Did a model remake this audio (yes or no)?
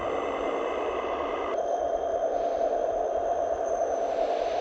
yes